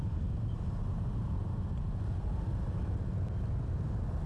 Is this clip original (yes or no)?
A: yes